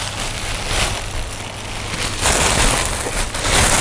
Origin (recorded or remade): recorded